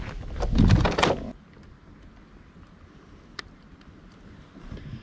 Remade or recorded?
recorded